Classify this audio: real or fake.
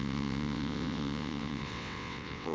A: fake